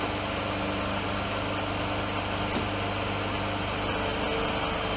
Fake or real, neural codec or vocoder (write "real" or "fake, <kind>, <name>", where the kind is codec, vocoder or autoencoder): real